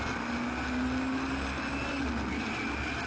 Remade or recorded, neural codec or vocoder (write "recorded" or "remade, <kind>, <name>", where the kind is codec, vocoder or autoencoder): recorded